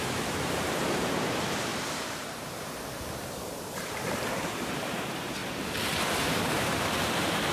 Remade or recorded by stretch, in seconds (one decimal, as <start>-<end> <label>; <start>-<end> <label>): 0.0-5.4 remade; 5.4-6.3 recorded; 6.3-7.5 remade